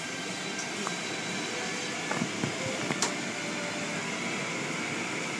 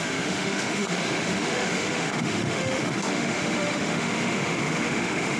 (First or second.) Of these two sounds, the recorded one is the first